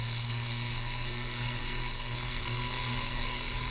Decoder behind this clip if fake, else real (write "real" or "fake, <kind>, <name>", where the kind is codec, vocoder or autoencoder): fake, codec, SNAC